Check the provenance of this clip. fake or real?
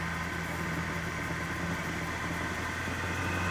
real